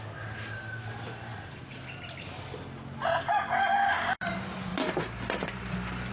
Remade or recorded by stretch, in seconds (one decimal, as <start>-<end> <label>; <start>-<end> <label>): 0.0-6.1 recorded